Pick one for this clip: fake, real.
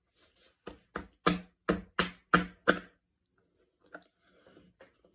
real